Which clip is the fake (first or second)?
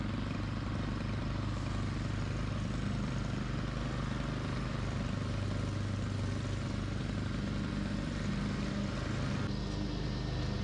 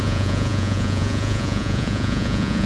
second